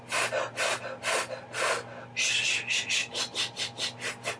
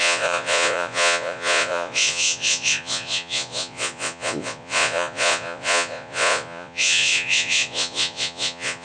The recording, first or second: first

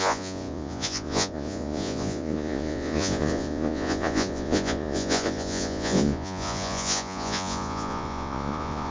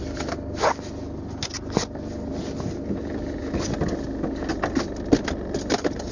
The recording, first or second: second